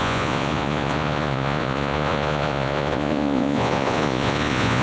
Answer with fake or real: fake